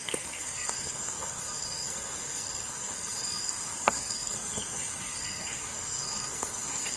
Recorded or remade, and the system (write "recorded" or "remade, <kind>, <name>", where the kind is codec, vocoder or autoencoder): remade, codec, SNAC